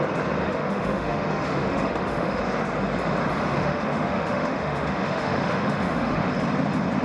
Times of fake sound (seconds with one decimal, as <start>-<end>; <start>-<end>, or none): 0.4-2.4; 3.5-6.3